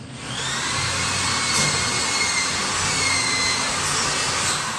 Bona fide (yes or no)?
yes